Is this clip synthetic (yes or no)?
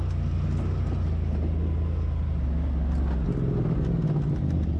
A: no